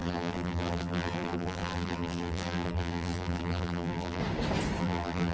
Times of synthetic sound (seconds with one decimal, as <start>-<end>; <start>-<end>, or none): 0.0-4.2; 4.8-5.3